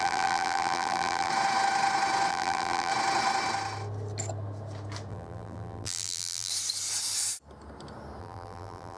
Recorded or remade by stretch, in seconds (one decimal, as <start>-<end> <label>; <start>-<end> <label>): 0.0-1.3 remade; 1.3-2.3 recorded; 2.3-2.9 remade; 2.9-5.1 recorded; 5.1-6.5 remade; 6.5-8.2 recorded; 8.2-9.0 remade